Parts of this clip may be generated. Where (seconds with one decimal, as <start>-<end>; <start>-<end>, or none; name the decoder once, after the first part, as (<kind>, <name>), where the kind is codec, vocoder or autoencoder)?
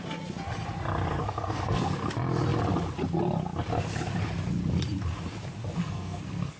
1.1-2.1 (codec, SNAC); 5.8-6.6